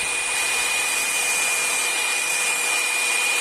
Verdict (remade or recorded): recorded